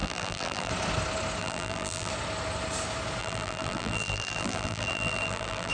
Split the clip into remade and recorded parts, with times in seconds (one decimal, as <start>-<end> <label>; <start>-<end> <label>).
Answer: 0.0-0.7 remade; 0.7-1.4 recorded; 1.4-2.1 remade; 2.1-3.2 recorded; 3.2-5.7 remade